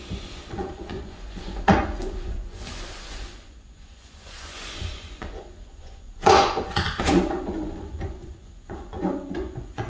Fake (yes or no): yes